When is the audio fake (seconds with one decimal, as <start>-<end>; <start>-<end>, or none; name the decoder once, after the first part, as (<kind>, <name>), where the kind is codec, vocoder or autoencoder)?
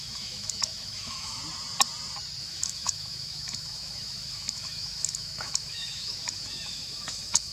0.0-1.4 (autoencoder, DAC-VAE); 2.4-7.5